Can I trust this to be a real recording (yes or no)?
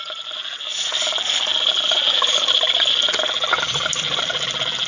yes